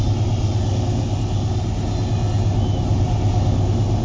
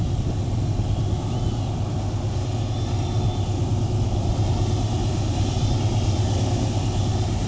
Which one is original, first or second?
first